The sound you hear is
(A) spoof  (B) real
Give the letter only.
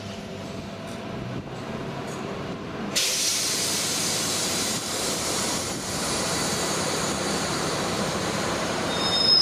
A